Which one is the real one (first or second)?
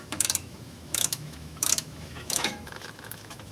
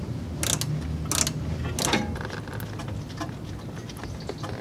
second